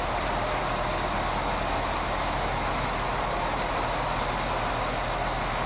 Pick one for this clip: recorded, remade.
recorded